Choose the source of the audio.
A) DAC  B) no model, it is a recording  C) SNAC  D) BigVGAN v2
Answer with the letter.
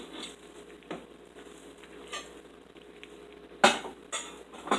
B